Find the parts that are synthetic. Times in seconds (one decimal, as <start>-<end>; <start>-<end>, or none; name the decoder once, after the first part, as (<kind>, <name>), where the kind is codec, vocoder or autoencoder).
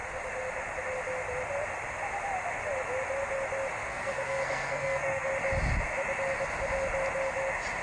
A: 3.9-5.3 (codec, SNAC)